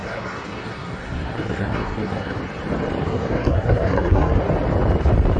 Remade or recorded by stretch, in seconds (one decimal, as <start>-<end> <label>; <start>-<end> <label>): 0.0-2.4 remade; 2.4-3.0 recorded; 3.0-4.4 remade; 4.4-5.4 recorded